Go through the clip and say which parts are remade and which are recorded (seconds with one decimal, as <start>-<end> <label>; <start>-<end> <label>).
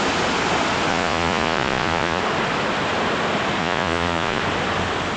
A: 0.0-0.9 recorded; 0.9-2.2 remade; 2.2-3.6 recorded; 3.6-4.4 remade; 4.4-5.2 recorded